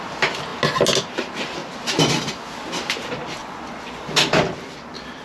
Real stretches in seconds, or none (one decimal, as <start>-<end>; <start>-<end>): 0.0-3.4; 4.0-5.2